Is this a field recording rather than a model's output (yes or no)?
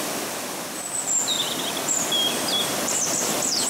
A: yes